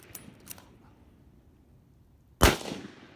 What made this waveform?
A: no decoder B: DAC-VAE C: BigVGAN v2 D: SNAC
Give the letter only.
A